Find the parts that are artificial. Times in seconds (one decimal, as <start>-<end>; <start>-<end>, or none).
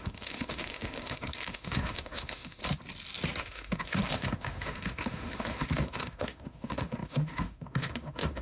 0.0-2.6; 3.4-8.4